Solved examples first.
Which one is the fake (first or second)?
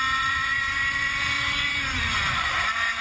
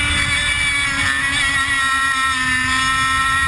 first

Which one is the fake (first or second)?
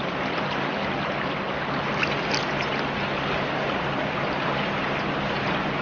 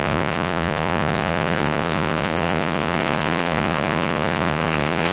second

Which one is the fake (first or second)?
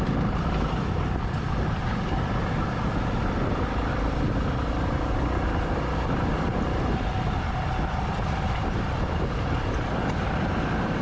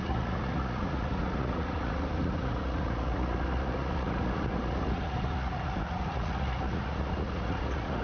second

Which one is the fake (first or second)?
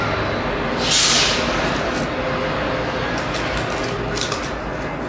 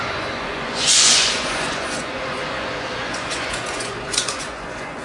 second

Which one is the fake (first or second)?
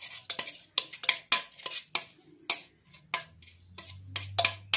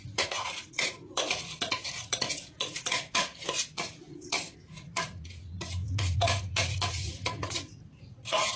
second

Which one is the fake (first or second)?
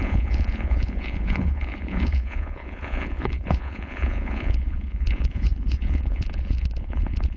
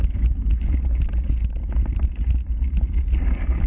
first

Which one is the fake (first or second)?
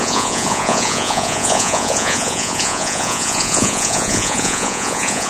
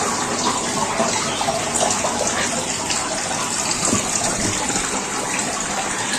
first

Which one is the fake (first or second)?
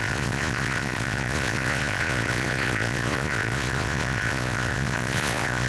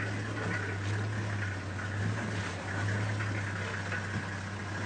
first